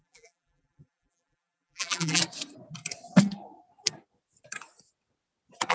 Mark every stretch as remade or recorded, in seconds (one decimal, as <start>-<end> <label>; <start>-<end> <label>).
0.0-2.2 remade; 2.2-5.7 recorded

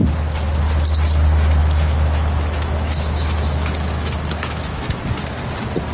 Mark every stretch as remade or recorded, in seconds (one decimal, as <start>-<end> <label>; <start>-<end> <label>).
0.0-1.6 recorded; 1.6-5.0 remade; 5.0-5.9 recorded

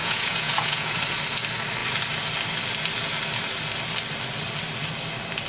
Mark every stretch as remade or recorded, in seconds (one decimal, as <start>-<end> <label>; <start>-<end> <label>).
0.0-1.0 remade; 1.0-5.5 recorded

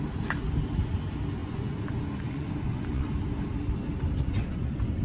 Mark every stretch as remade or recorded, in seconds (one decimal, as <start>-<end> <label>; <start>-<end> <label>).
0.0-1.4 recorded; 1.4-3.1 remade; 3.1-4.2 recorded; 4.2-5.0 remade

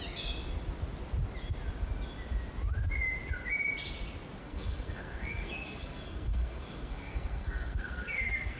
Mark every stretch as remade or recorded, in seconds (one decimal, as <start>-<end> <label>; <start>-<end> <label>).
0.0-4.4 recorded; 4.4-8.6 remade

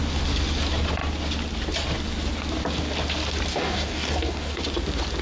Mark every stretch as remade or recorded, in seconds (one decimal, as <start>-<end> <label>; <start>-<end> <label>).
0.0-3.5 recorded; 3.5-4.6 remade; 4.6-5.2 recorded